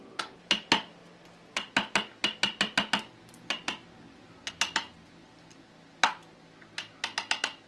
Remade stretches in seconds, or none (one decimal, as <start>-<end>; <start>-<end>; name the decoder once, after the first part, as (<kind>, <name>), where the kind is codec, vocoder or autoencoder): none